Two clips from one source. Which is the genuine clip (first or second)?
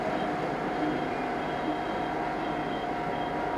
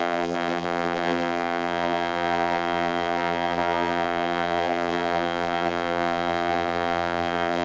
first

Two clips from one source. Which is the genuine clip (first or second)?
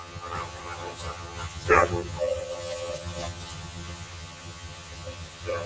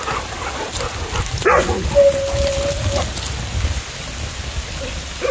second